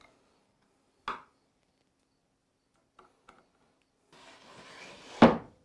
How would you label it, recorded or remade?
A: recorded